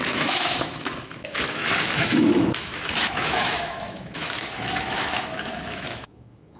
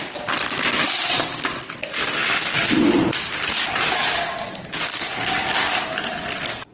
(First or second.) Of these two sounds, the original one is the second